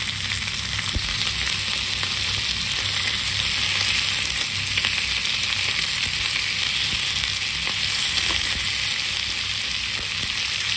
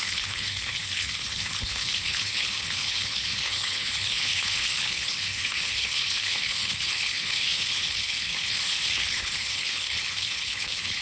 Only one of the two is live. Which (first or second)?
first